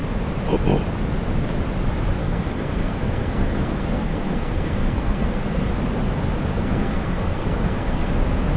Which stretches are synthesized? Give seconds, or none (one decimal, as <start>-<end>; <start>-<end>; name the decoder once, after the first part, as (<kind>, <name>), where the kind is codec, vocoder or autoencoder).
2.2-5.7 (codec, SNAC); 6.5-8.1